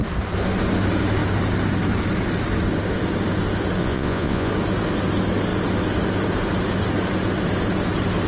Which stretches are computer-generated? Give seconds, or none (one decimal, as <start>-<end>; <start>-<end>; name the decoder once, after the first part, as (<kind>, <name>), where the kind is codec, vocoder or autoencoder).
3.8-4.5 (vocoder, Vocos)